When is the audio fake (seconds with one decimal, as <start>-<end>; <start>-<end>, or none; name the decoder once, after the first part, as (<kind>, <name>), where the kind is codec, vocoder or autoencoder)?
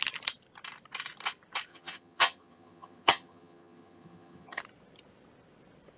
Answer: 1.7-4.6 (vocoder, HiFi-GAN)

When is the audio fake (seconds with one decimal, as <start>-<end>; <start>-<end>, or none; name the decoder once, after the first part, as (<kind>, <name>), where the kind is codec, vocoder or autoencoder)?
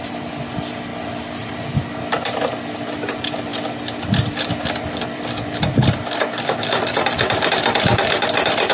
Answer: none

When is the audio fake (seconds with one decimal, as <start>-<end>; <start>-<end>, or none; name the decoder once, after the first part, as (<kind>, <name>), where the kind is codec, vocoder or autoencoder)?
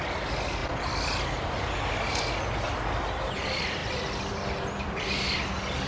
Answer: 0.0-0.6 (vocoder, BigVGAN v2); 3.3-5.9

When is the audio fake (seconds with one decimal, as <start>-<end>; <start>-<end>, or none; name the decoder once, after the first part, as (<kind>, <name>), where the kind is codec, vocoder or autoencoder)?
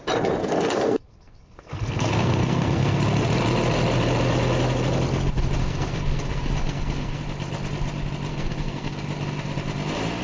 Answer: 0.4-3.0 (codec, SNAC); 5.6-7.2; 8.3-9.0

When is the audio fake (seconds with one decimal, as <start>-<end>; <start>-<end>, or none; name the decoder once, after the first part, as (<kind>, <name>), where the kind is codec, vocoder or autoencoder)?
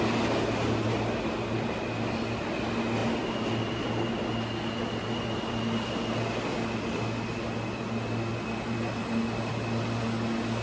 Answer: none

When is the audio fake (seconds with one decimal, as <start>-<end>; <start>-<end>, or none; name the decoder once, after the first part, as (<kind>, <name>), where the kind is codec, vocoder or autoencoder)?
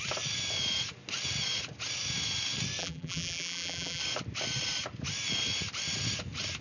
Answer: 2.8-4.0 (vocoder, BigVGAN v2)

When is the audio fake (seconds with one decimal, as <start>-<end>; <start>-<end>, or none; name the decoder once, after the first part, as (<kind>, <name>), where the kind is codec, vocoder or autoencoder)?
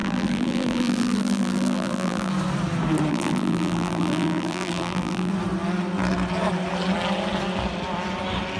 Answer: 0.0-2.3 (vocoder, BigVGAN v2); 3.1-5.3